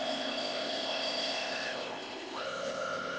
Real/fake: fake